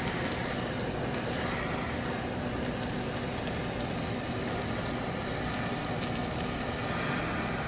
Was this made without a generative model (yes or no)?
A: yes